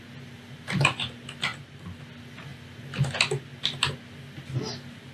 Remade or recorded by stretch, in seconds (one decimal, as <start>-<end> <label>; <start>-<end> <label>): 0.0-5.1 recorded